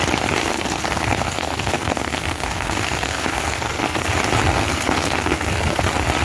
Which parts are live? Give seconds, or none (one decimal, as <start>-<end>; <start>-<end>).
0.0-0.4; 4.1-4.5; 5.8-6.2